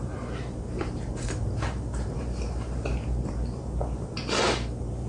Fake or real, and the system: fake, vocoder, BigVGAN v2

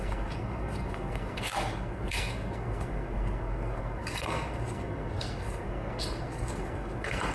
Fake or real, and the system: fake, codec, SNAC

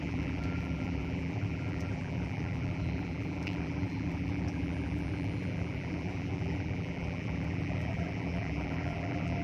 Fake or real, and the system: fake, vocoder, BigVGAN v2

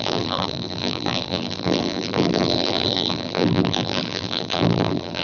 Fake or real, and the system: fake, vocoder, BigVGAN v2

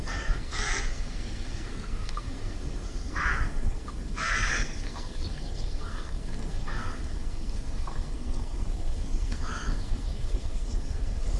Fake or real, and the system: fake, codec, SNAC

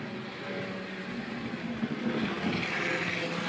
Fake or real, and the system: real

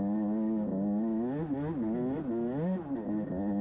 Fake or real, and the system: real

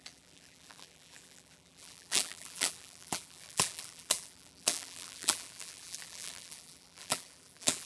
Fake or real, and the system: fake, vocoder, BigVGAN v2